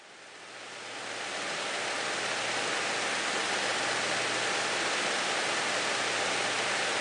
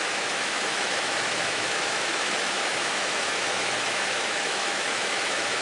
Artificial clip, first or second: second